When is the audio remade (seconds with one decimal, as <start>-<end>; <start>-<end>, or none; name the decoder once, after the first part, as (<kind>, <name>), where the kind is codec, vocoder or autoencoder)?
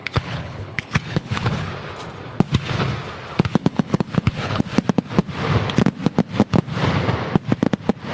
0.0-1.7 (codec, HILCodec); 3.6-4.6